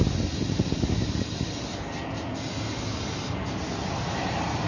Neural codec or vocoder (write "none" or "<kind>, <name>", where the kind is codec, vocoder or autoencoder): none